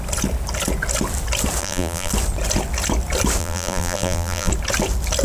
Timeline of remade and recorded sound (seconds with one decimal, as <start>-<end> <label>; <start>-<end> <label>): 0.0-1.6 recorded; 1.6-2.1 remade; 2.1-3.4 recorded; 3.4-4.5 remade; 4.5-5.2 recorded